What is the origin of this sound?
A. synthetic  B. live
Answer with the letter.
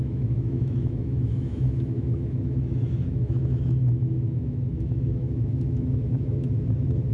A